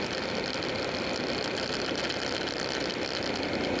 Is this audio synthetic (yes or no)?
no